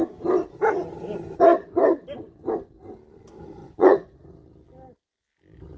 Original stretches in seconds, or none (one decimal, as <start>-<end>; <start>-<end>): 0.0-3.6; 4.3-5.8